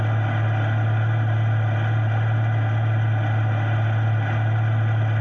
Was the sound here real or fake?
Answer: real